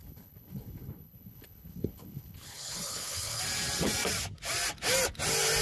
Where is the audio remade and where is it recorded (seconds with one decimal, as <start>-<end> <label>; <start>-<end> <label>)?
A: 0.0-3.4 remade; 3.4-5.6 recorded